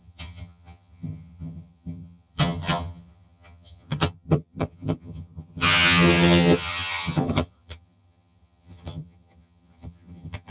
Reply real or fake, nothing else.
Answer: fake